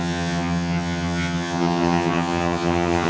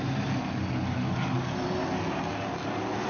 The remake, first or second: first